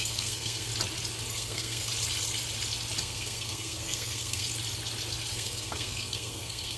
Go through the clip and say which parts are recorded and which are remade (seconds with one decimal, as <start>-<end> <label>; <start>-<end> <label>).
0.0-0.7 remade; 0.7-1.3 recorded; 1.3-1.9 remade; 1.9-3.0 recorded; 3.0-4.5 remade; 4.5-5.3 recorded; 5.3-6.8 remade